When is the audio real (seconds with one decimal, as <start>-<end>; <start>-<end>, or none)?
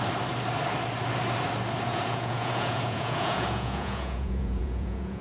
0.0-1.9